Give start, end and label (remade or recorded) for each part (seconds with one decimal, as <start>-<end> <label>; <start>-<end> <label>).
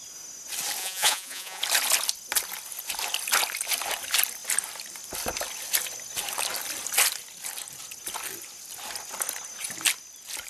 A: 0.0-0.8 recorded; 0.8-1.6 remade; 1.6-10.5 recorded